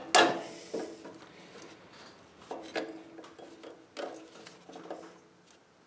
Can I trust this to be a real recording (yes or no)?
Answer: yes